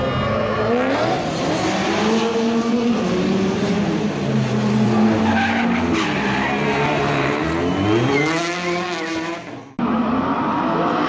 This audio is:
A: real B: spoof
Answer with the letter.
A